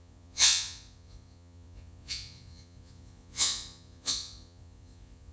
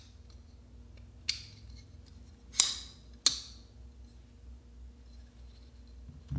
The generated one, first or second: first